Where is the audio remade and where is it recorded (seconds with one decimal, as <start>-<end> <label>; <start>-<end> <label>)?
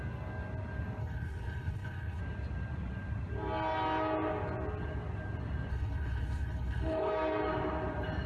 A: 0.0-1.0 recorded; 1.0-2.2 remade; 2.2-5.7 recorded; 5.7-7.1 remade; 7.1-8.3 recorded